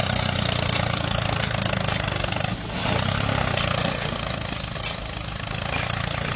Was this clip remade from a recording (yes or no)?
no